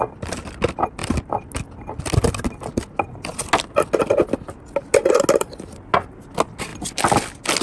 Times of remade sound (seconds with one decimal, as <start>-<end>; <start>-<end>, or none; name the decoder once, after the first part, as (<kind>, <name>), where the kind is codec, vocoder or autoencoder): none

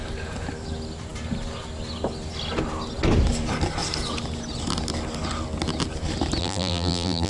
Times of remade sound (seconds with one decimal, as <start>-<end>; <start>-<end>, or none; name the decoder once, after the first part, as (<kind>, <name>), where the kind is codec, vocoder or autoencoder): 6.4-7.3 (vocoder, BigVGAN v2)

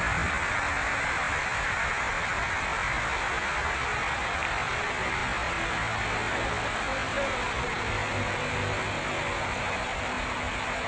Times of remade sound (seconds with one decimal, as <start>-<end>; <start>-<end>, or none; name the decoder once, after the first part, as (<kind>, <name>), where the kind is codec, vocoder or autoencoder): none